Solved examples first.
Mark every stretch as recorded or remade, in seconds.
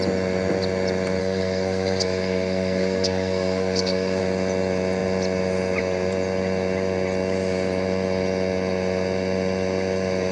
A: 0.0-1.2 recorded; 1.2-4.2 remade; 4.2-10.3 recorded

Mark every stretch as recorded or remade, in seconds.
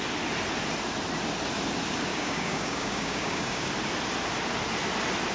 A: 0.0-2.1 recorded; 2.1-3.7 remade; 3.7-5.3 recorded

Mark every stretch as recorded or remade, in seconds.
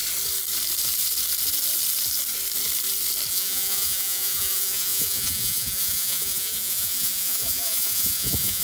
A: 0.0-3.3 recorded; 3.3-8.6 remade